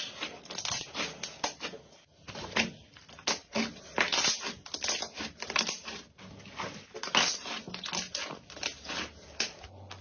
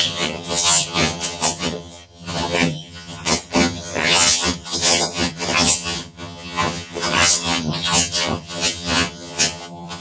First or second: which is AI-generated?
second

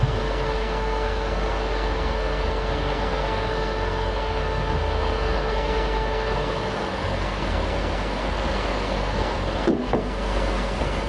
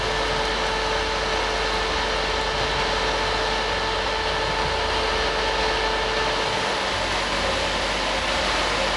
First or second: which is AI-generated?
first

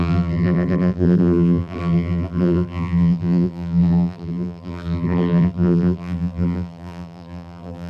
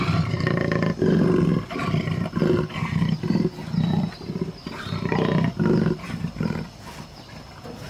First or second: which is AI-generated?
first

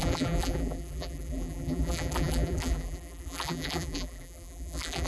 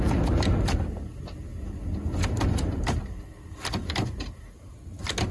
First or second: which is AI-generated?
first